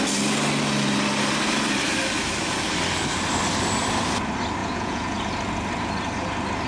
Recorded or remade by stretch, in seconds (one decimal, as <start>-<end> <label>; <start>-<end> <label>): 0.0-4.6 recorded; 4.6-5.2 remade; 5.2-6.7 recorded